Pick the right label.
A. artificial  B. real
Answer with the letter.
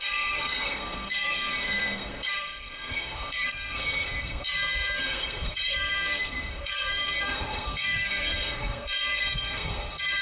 A